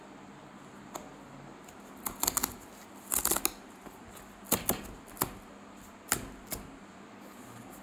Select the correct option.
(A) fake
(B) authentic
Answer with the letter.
B